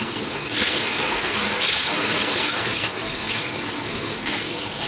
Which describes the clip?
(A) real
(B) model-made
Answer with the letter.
B